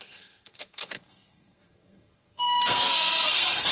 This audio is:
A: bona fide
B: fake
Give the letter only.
B